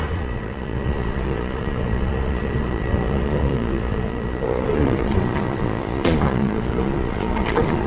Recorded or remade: remade